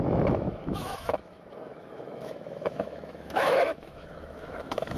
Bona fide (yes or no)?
no